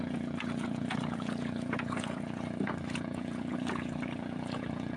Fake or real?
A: fake